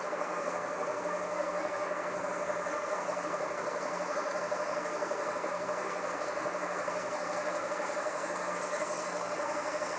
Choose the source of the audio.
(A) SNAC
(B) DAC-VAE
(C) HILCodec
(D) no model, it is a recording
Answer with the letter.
A